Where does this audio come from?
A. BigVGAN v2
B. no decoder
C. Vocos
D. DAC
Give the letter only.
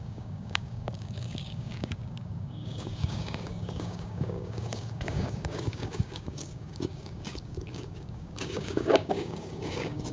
D